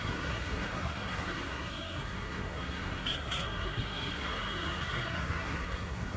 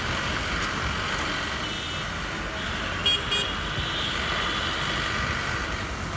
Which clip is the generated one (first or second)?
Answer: first